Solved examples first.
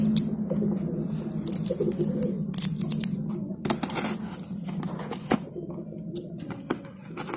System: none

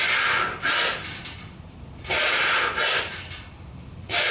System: none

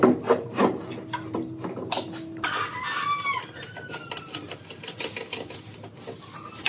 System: none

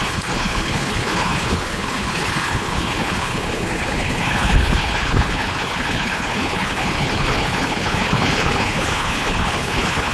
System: codec, HILCodec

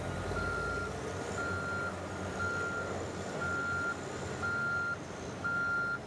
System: none